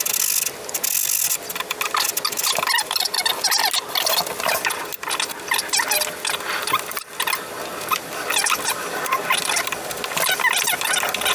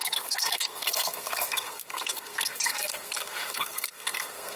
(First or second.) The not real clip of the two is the second